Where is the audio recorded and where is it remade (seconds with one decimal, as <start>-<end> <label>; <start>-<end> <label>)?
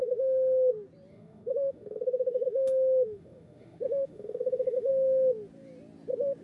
0.0-0.7 remade; 0.7-1.1 recorded; 1.1-4.9 remade; 4.9-6.4 recorded